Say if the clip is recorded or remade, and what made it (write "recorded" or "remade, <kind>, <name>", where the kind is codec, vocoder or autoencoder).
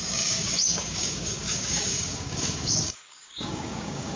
remade, codec, DAC